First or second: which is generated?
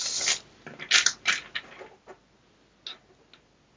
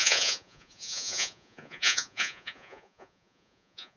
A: second